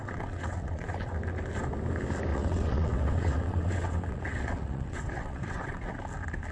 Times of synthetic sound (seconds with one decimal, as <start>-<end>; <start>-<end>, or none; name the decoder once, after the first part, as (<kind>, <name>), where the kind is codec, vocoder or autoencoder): 0.0-1.2 (vocoder, WaveNeXt); 2.3-6.0